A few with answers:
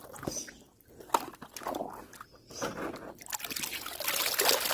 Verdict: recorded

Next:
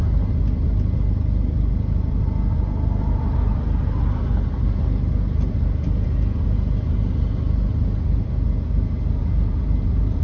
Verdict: recorded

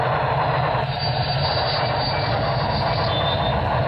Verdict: recorded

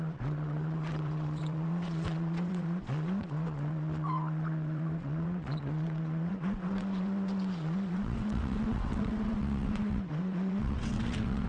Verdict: remade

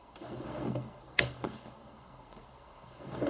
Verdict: remade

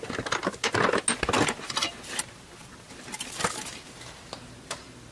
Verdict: recorded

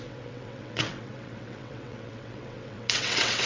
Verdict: remade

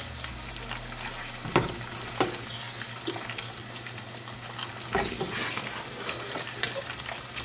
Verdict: recorded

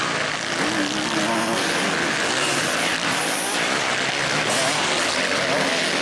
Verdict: recorded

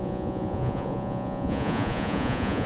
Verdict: remade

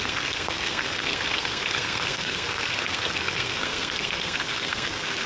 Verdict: remade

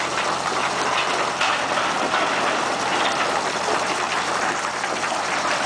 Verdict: recorded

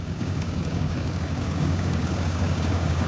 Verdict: remade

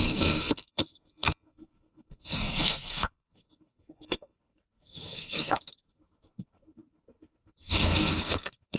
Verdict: remade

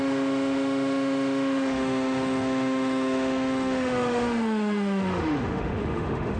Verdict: remade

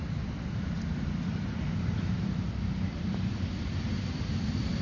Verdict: remade